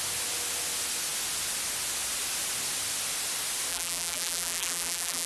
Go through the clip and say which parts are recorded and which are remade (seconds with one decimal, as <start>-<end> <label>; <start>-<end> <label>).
0.0-3.7 recorded; 3.7-5.3 remade